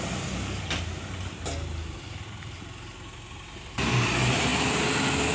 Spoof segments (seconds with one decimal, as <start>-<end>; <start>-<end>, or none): none